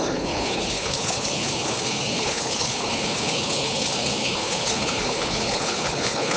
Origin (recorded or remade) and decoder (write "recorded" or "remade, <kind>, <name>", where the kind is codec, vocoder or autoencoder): remade, codec, HILCodec